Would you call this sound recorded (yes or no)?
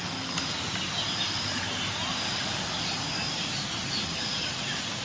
yes